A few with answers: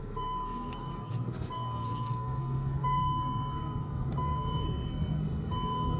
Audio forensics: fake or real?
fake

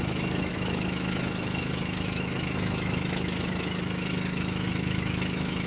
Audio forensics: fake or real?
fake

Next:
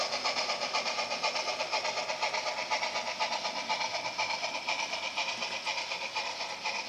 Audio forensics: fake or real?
real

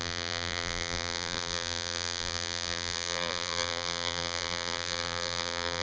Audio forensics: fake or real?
fake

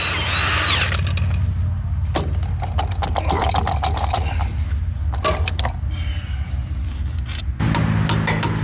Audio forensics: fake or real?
real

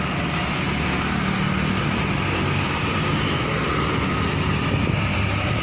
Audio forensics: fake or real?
real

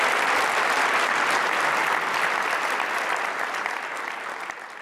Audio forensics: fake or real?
real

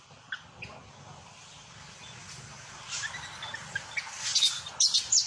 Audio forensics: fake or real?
real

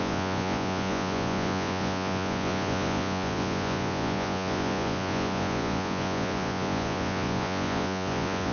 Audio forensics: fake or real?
fake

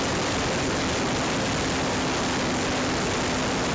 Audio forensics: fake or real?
real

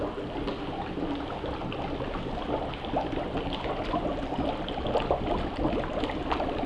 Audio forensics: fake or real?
real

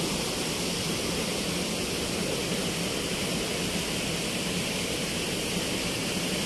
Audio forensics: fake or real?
real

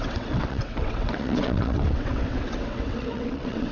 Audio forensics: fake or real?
fake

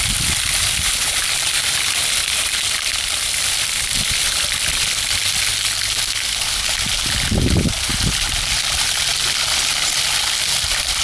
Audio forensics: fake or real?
real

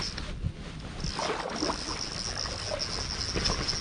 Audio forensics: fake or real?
real